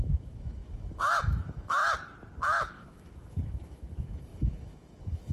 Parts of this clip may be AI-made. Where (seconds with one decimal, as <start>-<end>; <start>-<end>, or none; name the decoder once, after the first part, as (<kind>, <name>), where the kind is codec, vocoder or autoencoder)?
0.0-1.8 (autoencoder, DAC-VAE); 2.7-5.3